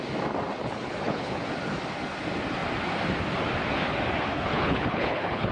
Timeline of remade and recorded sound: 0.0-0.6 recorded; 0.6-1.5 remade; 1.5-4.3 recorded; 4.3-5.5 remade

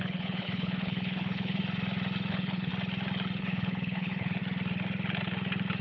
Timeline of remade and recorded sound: 0.0-1.6 remade; 1.6-2.3 recorded; 2.3-2.7 remade; 2.7-3.4 recorded; 3.4-4.4 remade; 4.4-5.8 recorded

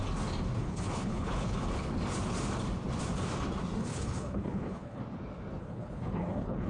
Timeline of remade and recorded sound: 0.0-0.6 recorded; 0.6-1.6 remade; 1.6-3.8 recorded; 3.8-5.0 remade; 5.0-5.6 recorded; 5.6-6.7 remade

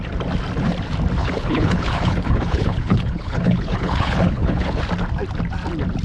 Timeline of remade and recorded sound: 0.0-1.2 recorded; 1.2-4.8 remade; 4.8-6.0 recorded